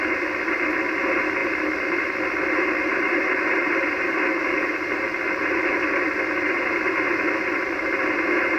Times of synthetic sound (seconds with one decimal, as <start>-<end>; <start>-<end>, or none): none